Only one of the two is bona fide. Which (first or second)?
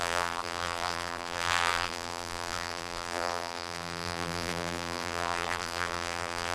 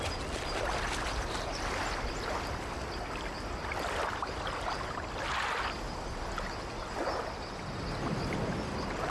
second